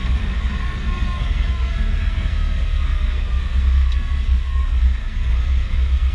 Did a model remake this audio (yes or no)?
yes